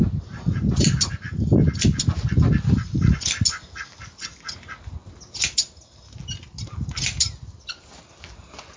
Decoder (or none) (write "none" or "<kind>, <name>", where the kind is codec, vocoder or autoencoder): none